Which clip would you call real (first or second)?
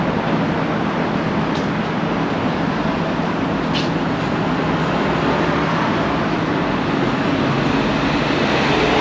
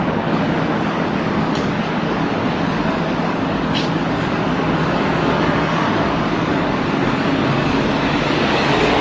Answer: first